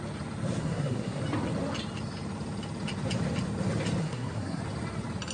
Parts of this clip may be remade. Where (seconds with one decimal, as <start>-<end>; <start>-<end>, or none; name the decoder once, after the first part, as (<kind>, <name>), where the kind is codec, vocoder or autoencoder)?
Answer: 0.6-1.2 (codec, SNAC); 4.0-4.6